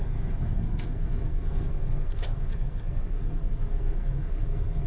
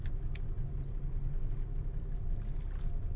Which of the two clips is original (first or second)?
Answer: second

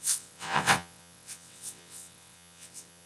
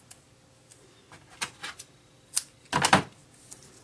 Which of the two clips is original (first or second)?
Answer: second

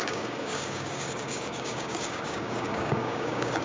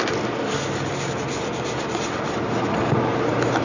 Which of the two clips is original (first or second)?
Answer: second